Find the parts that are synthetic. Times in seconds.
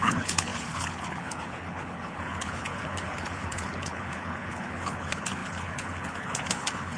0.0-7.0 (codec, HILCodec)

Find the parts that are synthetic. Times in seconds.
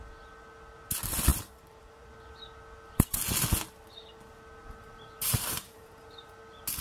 1.3-2.1 (vocoder, BigVGAN v2); 4.6-6.3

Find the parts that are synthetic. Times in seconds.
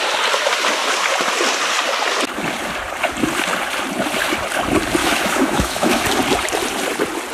5.0-6.0 (autoencoder, DAC-VAE)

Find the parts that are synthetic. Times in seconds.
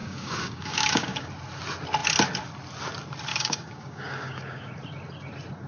0.0-1.3 (codec, DAC); 3.3-4.7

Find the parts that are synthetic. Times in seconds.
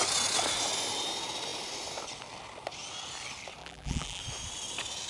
3.6-4.2 (vocoder, BigVGAN v2)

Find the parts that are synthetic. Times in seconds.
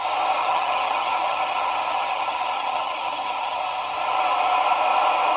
0.4-3.6 (vocoder, HiFi-GAN)